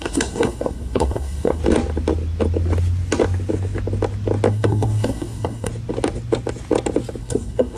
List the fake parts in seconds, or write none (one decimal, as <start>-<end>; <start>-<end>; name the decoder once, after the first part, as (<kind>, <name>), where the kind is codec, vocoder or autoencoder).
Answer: 0.0-1.6 (codec, SNAC); 4.5-5.7; 7.2-7.8